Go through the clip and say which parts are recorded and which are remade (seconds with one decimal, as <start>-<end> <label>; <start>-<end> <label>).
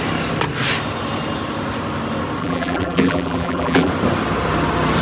0.0-2.4 recorded; 2.4-3.9 remade; 3.9-5.0 recorded